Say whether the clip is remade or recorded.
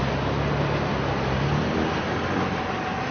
recorded